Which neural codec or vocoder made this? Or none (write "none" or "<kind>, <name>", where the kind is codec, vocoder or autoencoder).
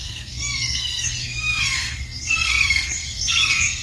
codec, SNAC